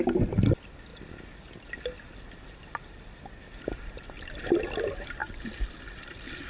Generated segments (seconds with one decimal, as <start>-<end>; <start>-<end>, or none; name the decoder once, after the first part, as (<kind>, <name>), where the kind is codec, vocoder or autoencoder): none